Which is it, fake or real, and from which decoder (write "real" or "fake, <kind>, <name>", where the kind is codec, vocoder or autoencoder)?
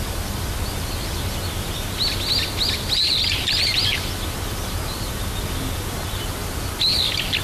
real